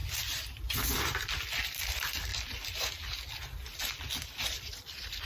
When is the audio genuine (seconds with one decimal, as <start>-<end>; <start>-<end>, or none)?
0.0-2.3; 2.9-5.3